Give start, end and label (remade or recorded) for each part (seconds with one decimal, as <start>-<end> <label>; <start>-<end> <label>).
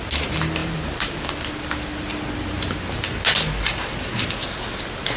0.0-0.6 recorded; 0.6-1.3 remade; 1.3-5.2 recorded